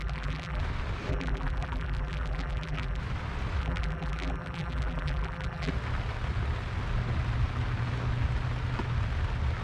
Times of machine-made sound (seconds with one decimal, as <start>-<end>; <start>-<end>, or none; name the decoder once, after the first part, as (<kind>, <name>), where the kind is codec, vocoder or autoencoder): 0.0-0.6 (vocoder, BigVGAN v2); 1.1-3.0; 3.6-5.7